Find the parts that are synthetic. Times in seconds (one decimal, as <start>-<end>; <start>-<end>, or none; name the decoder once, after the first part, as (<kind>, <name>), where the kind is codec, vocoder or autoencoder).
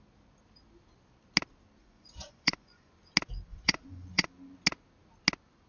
1.8-2.9 (vocoder, Vocos); 3.5-4.3